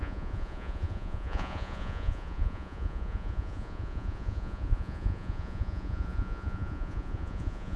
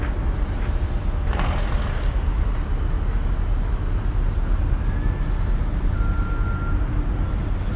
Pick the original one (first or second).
second